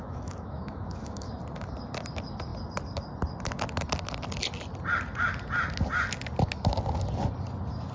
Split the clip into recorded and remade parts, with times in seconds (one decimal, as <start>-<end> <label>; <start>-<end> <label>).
0.0-1.3 remade; 1.3-7.9 recorded